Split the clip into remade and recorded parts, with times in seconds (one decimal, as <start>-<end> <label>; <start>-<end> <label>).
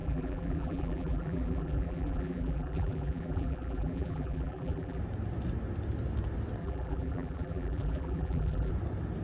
0.0-5.0 remade; 5.0-6.6 recorded; 6.6-8.7 remade; 8.7-9.2 recorded